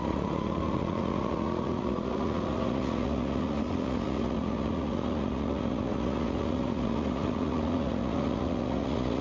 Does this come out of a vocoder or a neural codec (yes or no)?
yes